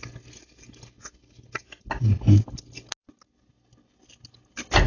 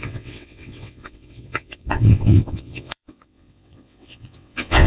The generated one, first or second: second